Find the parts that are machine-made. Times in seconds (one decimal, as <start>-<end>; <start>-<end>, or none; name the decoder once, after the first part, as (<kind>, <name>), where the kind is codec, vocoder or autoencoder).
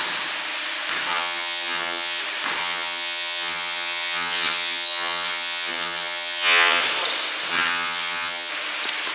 1.1-2.2 (vocoder, HiFi-GAN); 2.6-6.8; 7.5-8.5